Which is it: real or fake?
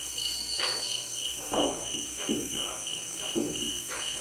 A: fake